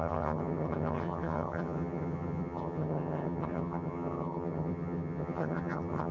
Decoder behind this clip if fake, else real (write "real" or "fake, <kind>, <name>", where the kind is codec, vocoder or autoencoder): fake, vocoder, HiFi-GAN